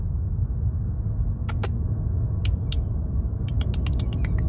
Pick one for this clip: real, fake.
real